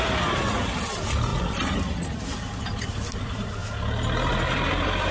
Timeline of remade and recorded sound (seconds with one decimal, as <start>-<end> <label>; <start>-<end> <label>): 0.0-3.6 remade; 3.6-4.3 recorded; 4.3-5.1 remade